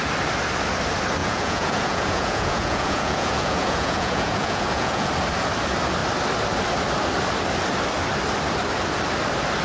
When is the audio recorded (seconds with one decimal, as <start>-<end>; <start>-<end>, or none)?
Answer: 0.0-1.2; 5.1-9.6